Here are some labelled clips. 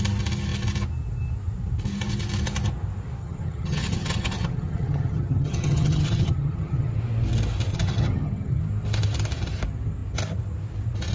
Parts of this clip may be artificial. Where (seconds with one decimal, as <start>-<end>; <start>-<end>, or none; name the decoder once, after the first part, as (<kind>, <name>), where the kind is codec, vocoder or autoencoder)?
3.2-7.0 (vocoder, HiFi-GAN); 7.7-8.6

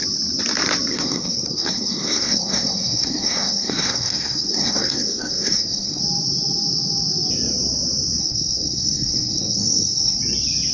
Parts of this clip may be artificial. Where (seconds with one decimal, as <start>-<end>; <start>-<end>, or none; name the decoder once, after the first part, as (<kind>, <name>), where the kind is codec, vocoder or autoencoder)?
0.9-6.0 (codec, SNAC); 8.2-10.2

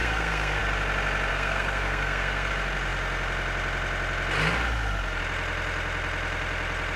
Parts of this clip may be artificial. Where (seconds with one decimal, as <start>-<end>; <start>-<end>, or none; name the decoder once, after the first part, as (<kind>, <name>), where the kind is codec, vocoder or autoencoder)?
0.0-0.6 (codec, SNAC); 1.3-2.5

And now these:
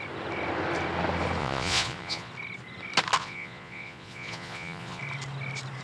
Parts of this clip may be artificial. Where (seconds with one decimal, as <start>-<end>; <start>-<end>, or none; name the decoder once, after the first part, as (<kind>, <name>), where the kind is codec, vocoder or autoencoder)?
1.4-2.3 (vocoder, Vocos); 3.2-5.0

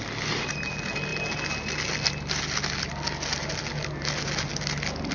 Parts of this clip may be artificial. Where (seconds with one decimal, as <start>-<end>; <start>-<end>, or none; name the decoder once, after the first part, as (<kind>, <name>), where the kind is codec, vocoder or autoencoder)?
none

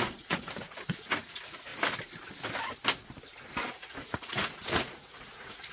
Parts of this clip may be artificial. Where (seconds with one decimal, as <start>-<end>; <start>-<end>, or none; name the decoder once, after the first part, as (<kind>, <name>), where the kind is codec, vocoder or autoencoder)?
0.0-1.7 (vocoder, Vocos); 3.7-5.7

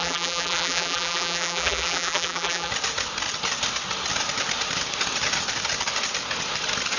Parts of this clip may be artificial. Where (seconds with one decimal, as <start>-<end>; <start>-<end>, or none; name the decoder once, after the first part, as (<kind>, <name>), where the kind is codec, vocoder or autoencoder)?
0.0-2.7 (vocoder, BigVGAN v2)